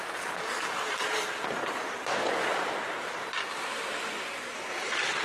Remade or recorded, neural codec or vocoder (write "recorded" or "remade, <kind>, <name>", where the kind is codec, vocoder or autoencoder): recorded